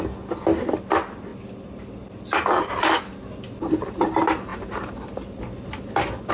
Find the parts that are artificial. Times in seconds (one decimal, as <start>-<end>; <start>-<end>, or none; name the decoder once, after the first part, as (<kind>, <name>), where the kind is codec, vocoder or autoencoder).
none